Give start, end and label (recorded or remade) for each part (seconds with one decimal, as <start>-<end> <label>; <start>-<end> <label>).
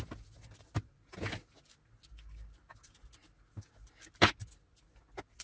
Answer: 0.0-5.4 recorded